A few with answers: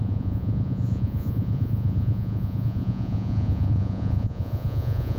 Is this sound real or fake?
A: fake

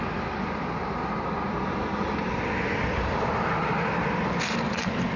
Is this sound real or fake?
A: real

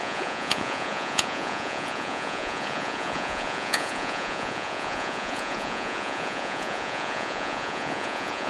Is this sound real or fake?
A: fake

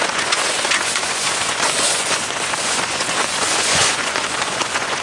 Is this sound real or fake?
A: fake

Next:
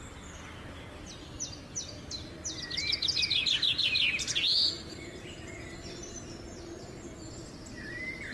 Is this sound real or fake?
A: real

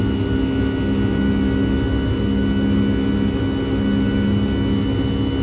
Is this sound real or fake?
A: real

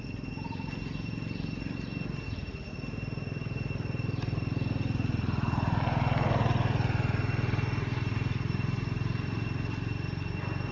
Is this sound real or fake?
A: real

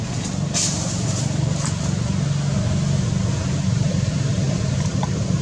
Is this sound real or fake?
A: real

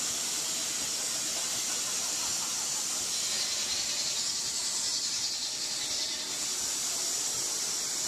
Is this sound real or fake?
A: real